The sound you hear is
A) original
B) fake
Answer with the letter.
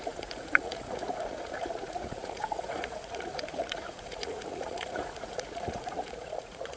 B